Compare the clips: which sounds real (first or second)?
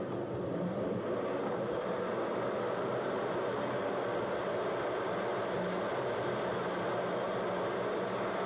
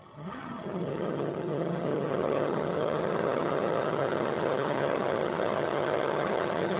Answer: first